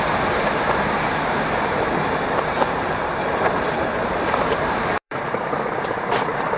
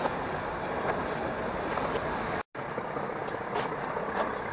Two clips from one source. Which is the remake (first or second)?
first